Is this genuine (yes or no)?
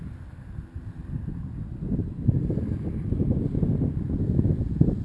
no